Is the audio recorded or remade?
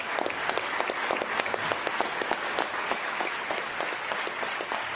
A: remade